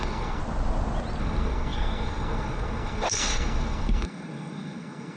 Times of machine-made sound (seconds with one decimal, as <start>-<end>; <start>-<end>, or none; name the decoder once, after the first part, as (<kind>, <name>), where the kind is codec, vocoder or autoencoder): 0.0-0.4 (codec, SNAC); 1.2-5.2